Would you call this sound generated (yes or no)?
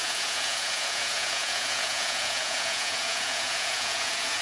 yes